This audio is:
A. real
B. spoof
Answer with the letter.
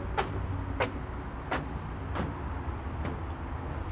A